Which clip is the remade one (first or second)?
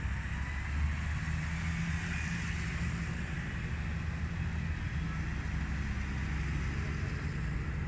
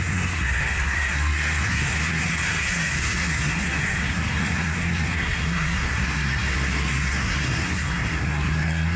second